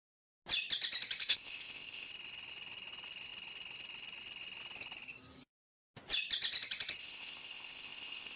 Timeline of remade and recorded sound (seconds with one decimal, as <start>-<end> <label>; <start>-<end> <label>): 0.0-1.2 recorded; 1.2-2.1 remade; 2.1-7.0 recorded; 7.0-8.4 remade